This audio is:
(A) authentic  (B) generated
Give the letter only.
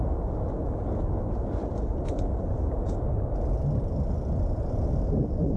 A